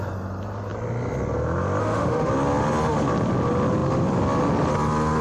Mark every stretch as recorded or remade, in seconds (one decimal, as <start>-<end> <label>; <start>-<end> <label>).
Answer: 0.0-1.8 recorded; 1.8-2.3 remade; 2.3-5.2 recorded